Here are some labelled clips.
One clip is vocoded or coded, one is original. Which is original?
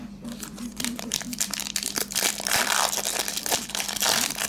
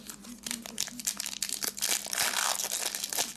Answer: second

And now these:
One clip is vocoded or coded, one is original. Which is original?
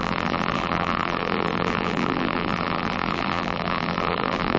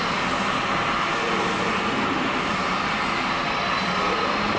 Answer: second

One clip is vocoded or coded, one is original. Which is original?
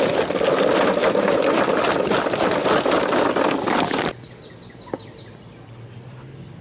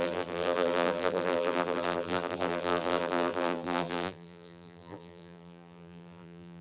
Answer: first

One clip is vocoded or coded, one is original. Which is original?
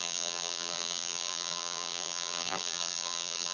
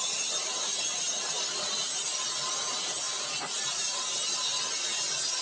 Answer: second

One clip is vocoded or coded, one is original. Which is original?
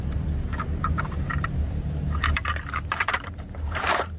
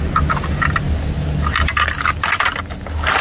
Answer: second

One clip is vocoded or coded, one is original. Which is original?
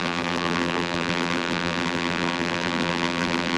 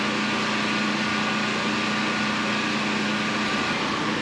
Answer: second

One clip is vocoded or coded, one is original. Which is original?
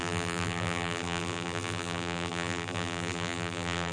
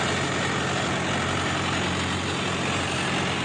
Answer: second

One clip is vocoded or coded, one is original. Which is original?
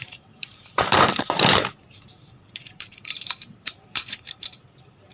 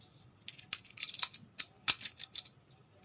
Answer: second